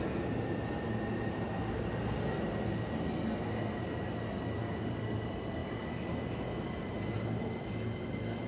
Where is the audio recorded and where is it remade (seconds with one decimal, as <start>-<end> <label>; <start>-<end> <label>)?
0.0-8.5 recorded